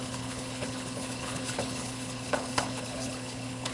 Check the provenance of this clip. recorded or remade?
remade